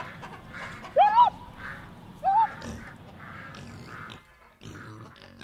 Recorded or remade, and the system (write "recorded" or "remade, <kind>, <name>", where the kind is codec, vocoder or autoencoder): recorded